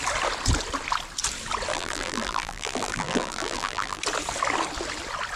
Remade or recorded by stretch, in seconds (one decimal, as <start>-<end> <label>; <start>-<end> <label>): 0.0-1.7 recorded; 1.7-4.0 remade; 4.0-5.4 recorded